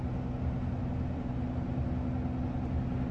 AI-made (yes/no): no